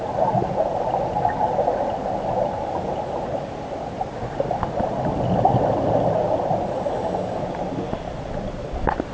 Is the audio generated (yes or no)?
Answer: no